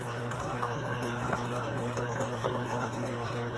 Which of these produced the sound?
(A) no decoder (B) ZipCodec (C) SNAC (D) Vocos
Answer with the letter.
C